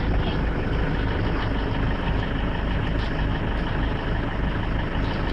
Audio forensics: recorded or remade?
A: recorded